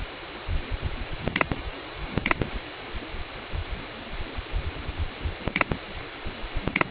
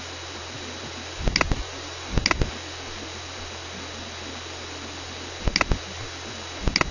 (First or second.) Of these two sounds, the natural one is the second